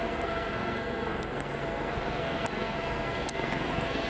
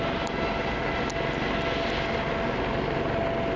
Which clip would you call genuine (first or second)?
second